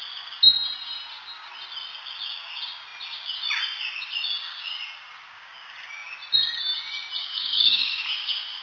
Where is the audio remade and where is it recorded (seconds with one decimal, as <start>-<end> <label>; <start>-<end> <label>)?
0.0-7.2 recorded; 7.2-8.6 remade